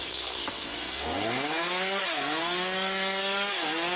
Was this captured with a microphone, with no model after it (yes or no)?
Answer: no